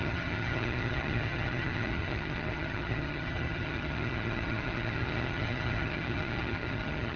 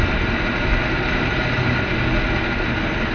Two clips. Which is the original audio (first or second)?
second